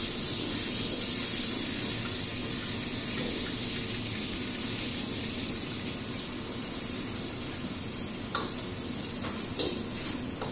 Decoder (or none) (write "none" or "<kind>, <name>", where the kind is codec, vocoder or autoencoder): none